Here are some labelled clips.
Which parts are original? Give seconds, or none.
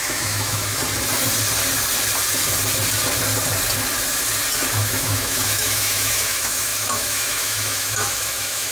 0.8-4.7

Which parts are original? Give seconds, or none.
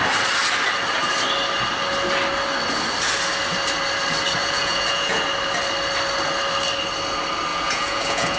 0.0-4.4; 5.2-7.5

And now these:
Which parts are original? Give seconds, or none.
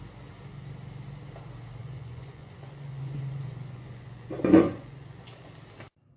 0.0-1.8; 5.5-6.2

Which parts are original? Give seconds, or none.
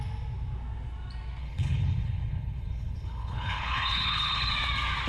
0.0-1.4; 4.5-5.1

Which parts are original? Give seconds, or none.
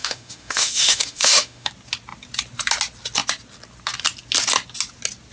1.7-5.3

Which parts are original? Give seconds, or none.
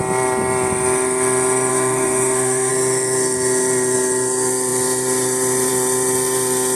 0.0-1.7; 2.7-6.8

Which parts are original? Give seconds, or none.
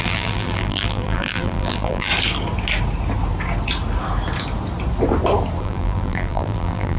2.1-5.6